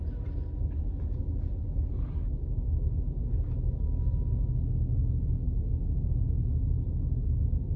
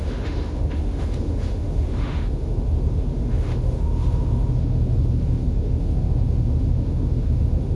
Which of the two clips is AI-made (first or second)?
second